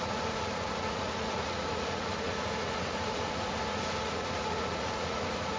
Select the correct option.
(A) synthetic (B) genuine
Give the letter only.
A